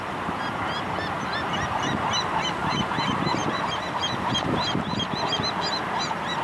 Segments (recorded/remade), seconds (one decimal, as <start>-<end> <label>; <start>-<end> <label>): 0.0-6.4 recorded